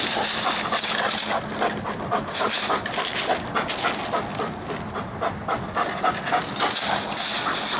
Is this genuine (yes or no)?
yes